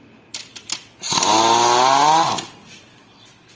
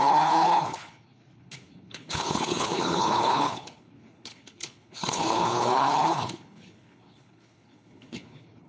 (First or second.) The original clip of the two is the first